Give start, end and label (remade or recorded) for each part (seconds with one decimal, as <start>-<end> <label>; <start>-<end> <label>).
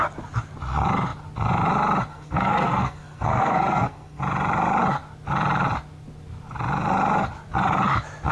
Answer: 0.0-2.1 recorded; 2.1-4.2 remade; 4.2-8.3 recorded